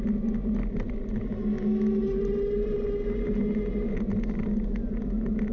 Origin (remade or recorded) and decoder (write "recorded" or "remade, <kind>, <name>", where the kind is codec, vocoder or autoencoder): recorded